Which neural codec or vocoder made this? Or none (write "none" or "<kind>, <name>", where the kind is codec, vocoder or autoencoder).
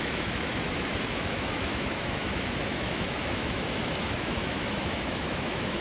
autoencoder, DAC-VAE